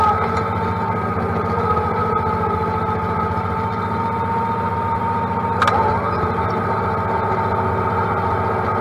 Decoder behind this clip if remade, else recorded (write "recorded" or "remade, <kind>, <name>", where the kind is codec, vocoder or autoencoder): recorded